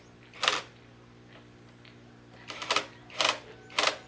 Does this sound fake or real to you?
real